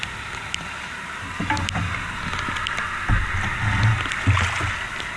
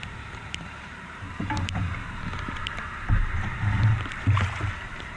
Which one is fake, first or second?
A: second